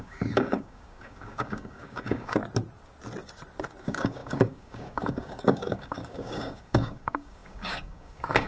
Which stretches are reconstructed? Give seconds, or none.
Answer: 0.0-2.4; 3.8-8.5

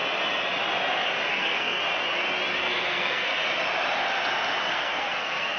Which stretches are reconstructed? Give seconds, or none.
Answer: 1.3-1.8; 2.6-3.3; 4.7-5.6